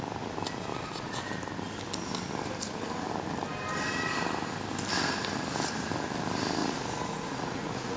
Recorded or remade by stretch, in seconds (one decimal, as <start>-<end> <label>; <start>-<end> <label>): 0.0-0.7 recorded; 0.7-1.2 remade; 1.2-6.6 recorded; 6.6-8.0 remade